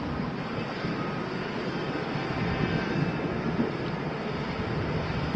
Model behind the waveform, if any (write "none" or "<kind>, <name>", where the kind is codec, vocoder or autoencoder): none